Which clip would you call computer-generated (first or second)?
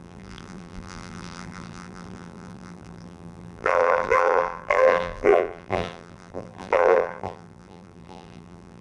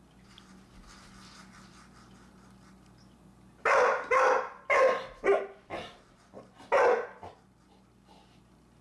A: first